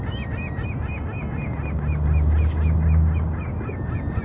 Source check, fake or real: real